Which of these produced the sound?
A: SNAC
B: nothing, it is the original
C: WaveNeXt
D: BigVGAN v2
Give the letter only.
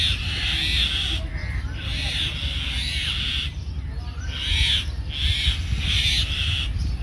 B